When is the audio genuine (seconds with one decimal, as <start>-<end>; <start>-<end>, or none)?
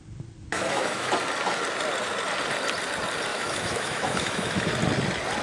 0.0-0.5; 1.1-3.3; 4.7-5.4